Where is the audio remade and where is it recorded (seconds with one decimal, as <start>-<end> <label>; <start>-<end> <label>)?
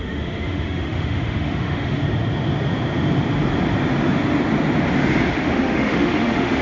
0.0-2.0 remade; 2.0-5.3 recorded; 5.3-6.6 remade